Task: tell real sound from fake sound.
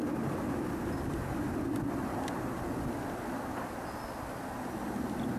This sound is real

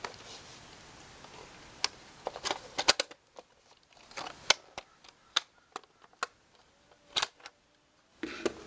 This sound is real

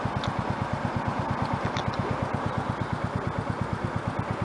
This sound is real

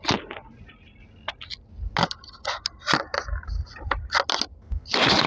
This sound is real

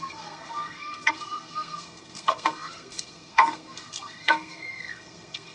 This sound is fake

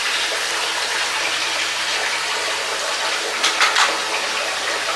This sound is real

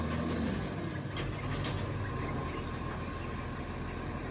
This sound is real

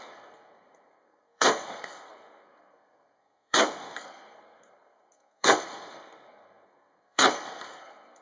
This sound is fake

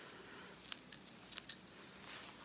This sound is real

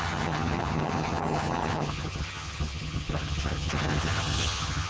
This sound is fake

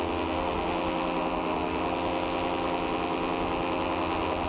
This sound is real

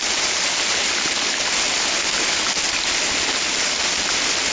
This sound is real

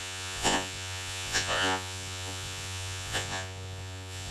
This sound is fake